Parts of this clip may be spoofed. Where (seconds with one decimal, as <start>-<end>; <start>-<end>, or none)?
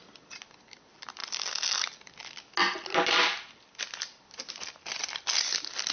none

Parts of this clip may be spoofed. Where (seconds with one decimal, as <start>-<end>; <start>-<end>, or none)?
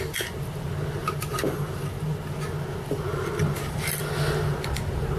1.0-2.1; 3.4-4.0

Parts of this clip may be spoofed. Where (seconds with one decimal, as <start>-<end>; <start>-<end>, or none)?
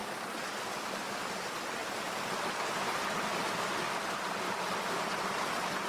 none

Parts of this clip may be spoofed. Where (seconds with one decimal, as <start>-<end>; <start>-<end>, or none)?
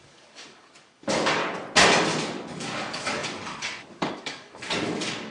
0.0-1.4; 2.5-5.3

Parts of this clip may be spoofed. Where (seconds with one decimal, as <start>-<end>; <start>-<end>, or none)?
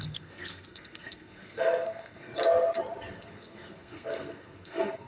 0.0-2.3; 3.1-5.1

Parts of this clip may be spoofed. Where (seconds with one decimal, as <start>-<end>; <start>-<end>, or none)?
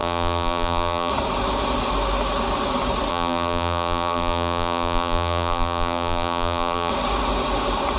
0.0-1.1; 3.1-6.9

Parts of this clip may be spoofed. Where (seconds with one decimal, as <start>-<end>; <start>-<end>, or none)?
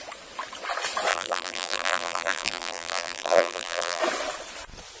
1.1-4.0